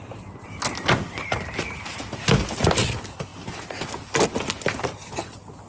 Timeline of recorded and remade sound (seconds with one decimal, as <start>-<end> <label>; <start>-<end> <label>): 0.0-5.7 recorded